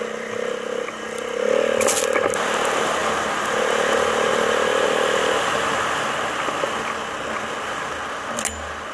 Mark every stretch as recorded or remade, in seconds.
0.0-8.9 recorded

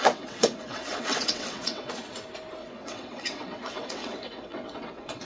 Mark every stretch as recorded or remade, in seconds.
0.0-1.9 remade; 1.9-2.6 recorded; 2.6-5.2 remade

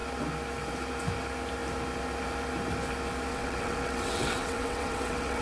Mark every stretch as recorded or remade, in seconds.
0.0-3.3 recorded; 3.3-5.4 remade

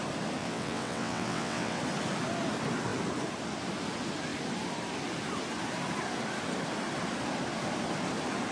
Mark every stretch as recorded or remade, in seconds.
0.0-0.4 recorded; 0.4-1.8 remade; 1.8-8.5 recorded

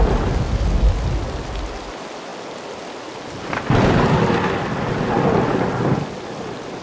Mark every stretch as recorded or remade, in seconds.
0.0-6.8 recorded

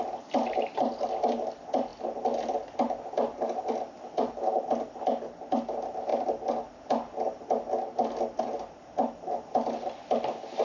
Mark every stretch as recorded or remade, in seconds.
0.0-10.6 recorded

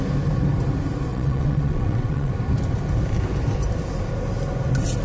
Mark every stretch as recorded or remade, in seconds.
0.0-1.1 recorded; 1.1-2.3 remade; 2.3-5.0 recorded